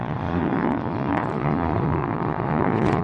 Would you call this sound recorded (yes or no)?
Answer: no